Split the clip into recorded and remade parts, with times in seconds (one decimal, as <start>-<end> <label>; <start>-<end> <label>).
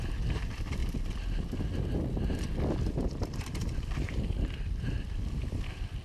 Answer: 0.0-0.8 remade; 0.8-3.5 recorded; 3.5-6.0 remade